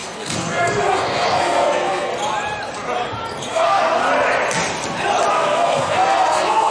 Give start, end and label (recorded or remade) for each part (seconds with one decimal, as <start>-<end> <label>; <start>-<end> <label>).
0.0-2.1 remade; 2.1-3.5 recorded; 3.5-4.0 remade; 4.0-5.3 recorded; 5.3-6.7 remade